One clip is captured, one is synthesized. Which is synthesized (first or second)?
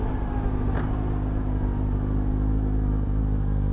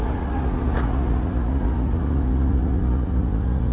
second